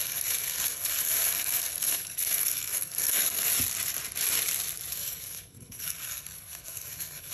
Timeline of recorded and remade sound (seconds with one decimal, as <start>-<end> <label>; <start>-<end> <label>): 0.0-3.5 remade; 3.5-4.9 recorded; 4.9-7.3 remade